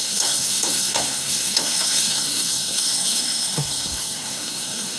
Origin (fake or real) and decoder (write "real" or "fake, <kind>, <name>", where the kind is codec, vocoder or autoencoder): fake, codec, SNAC